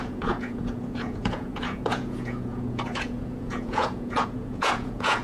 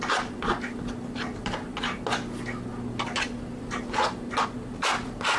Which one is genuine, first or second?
second